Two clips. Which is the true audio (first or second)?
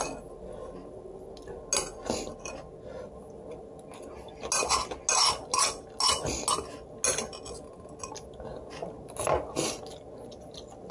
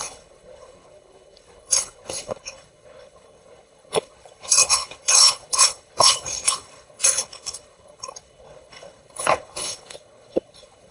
first